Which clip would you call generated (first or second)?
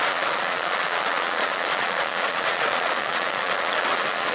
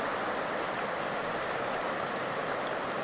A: first